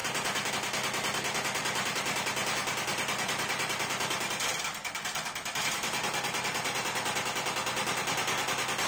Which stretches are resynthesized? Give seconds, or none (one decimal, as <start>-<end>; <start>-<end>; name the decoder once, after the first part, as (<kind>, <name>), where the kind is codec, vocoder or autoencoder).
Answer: 2.9-7.2 (vocoder, BigVGAN v2)